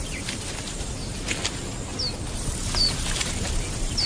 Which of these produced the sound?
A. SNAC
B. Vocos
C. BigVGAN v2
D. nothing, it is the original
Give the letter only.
D